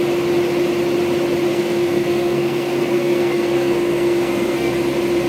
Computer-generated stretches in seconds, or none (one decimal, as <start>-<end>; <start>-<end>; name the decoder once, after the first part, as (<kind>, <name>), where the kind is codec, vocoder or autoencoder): 1.5-4.7 (codec, SNAC)